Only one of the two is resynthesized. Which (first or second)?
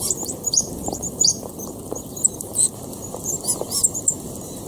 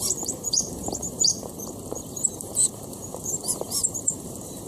second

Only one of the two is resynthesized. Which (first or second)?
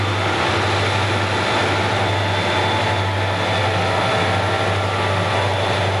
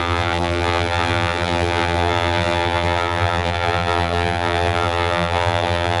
second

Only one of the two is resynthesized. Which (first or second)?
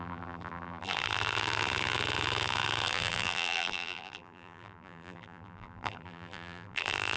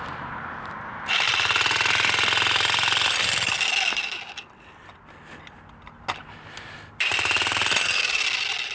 first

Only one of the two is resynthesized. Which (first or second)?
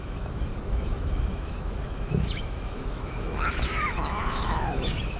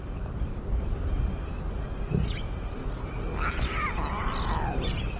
first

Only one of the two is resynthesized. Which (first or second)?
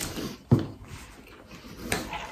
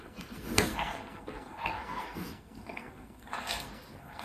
second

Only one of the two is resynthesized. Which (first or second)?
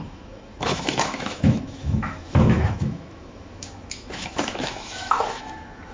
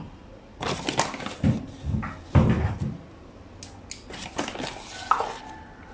first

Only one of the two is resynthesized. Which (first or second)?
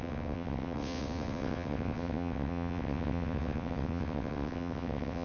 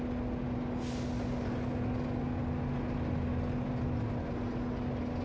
first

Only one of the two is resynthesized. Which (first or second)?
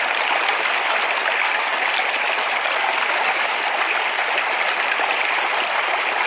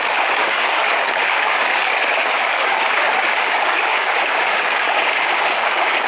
second